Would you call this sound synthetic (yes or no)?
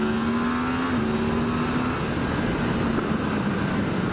no